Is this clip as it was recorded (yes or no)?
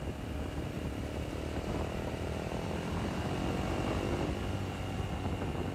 yes